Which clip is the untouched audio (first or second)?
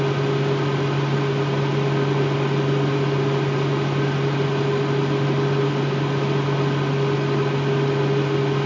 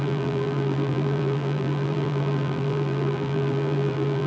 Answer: first